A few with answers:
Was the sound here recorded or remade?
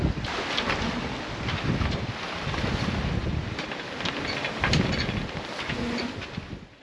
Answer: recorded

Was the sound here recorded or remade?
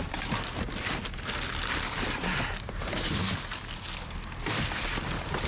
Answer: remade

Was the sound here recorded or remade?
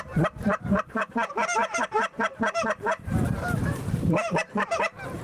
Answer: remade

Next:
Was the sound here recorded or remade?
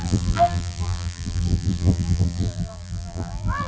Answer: remade